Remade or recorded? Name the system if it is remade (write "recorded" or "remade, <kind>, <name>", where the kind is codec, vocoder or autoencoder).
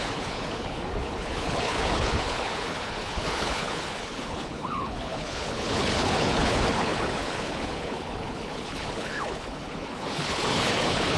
remade, codec, HILCodec